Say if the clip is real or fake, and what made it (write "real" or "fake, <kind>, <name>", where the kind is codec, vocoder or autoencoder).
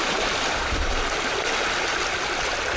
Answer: real